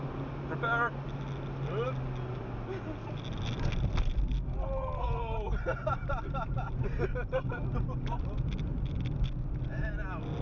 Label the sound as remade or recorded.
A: recorded